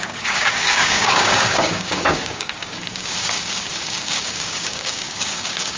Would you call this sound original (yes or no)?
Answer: no